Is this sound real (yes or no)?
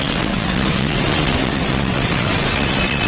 no